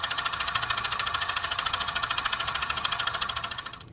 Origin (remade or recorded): remade